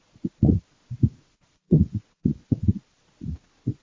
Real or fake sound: fake